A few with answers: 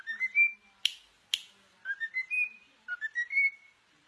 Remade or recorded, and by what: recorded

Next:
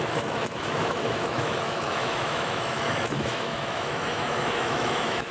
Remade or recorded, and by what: remade, autoencoder, DAC-VAE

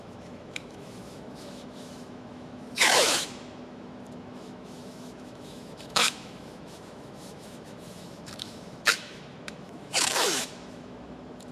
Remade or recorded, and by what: remade, autoencoder, DAC-VAE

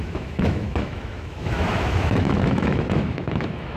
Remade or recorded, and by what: remade, autoencoder, DAC-VAE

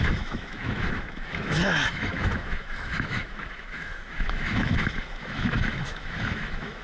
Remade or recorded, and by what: remade, autoencoder, DAC-VAE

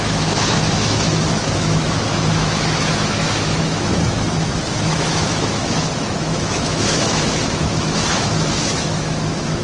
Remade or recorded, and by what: remade, autoencoder, DAC-VAE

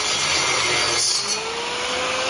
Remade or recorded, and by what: recorded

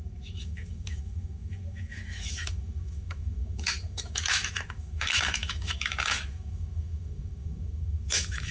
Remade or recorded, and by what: remade, autoencoder, DAC-VAE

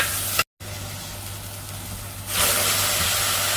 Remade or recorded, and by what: recorded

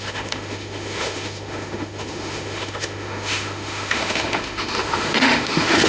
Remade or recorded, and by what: remade, autoencoder, DAC-VAE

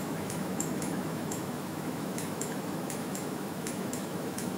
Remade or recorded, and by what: remade, autoencoder, DAC-VAE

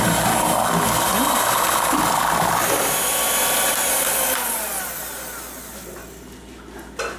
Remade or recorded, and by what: recorded